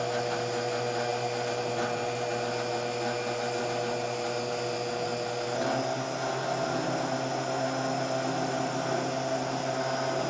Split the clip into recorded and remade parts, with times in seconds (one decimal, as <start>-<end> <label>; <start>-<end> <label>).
0.0-10.3 recorded

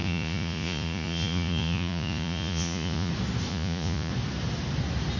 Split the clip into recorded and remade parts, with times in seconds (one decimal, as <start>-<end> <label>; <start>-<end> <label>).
0.0-3.1 remade; 3.1-3.5 recorded; 3.5-4.1 remade; 4.1-5.2 recorded

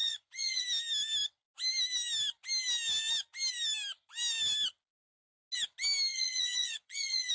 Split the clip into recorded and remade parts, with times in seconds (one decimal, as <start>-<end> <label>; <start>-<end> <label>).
0.0-0.6 remade; 0.6-6.1 recorded; 6.1-7.3 remade

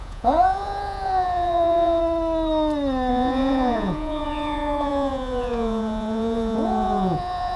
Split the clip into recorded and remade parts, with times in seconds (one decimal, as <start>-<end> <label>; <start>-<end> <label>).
0.0-2.0 remade; 2.0-3.1 recorded; 3.1-7.6 remade

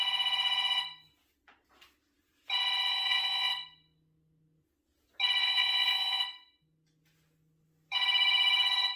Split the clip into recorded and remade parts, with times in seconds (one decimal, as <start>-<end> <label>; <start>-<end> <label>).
0.0-2.9 recorded; 2.9-3.5 remade; 3.5-5.4 recorded; 5.4-6.2 remade; 6.2-9.0 recorded

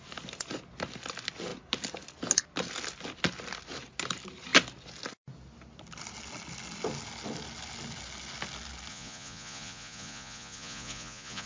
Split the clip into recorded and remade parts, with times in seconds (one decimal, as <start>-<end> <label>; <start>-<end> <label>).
0.0-8.9 recorded; 8.9-11.5 remade

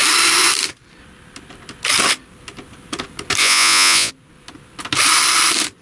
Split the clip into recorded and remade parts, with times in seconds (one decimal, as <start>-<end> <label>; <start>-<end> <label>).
0.0-3.4 recorded; 3.4-4.1 remade; 4.1-5.8 recorded

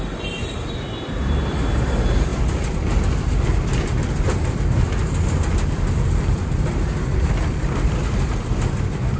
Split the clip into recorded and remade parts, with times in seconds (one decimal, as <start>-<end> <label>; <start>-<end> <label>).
0.0-9.2 recorded